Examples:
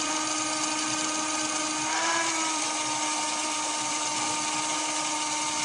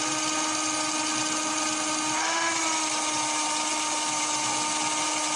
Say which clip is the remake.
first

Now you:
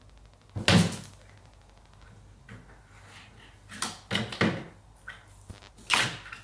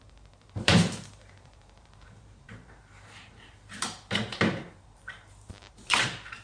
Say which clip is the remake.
second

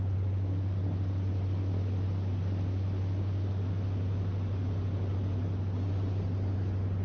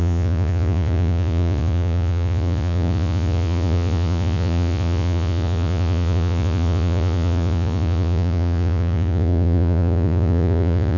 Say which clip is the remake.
second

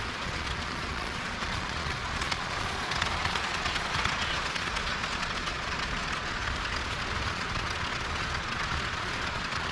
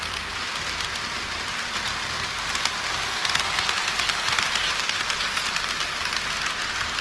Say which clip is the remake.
first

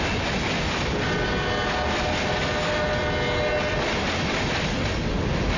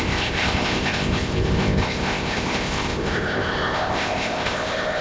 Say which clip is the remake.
second